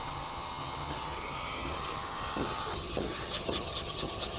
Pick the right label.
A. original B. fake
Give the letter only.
B